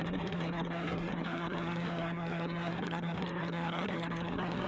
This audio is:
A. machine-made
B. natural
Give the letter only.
A